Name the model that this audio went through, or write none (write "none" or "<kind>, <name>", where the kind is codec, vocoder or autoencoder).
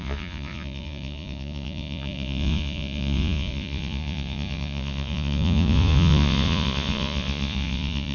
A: vocoder, Vocos